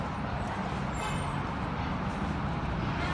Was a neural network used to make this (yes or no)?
no